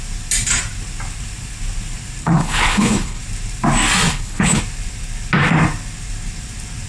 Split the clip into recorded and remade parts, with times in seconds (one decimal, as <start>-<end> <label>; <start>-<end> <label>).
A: 0.0-2.2 recorded; 2.2-3.2 remade; 3.2-4.1 recorded; 4.1-4.6 remade; 4.6-6.9 recorded